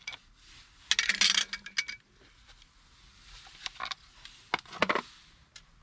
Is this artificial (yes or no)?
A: no